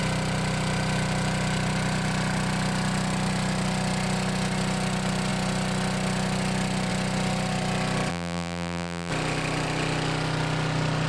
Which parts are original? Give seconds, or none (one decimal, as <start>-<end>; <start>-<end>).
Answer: 0.0-8.1; 9.1-11.1

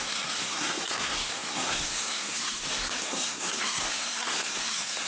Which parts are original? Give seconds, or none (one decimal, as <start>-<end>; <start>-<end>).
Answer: none

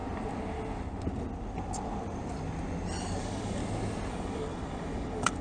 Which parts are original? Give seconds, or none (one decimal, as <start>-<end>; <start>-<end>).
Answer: 0.0-3.2; 3.6-4.1

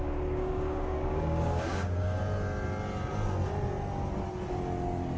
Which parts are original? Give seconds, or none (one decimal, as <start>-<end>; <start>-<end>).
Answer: 2.2-5.2

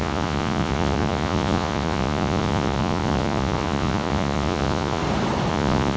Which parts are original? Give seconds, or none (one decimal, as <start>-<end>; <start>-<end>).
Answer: 5.0-5.5

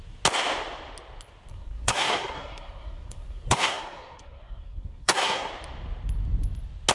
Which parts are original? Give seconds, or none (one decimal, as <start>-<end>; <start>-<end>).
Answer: 0.0-1.5; 5.5-6.9

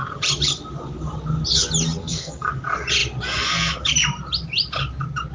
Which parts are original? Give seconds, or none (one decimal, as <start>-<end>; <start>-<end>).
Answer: 0.0-2.0; 2.5-5.3